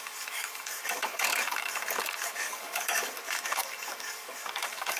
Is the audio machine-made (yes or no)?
yes